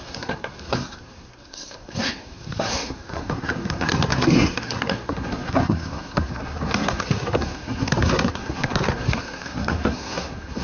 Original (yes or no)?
no